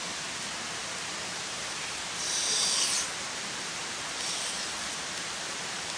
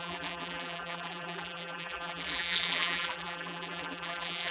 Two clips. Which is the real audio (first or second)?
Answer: first